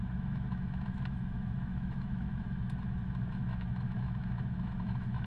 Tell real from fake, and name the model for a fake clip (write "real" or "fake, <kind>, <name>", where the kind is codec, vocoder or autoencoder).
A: fake, autoencoder, DAC-VAE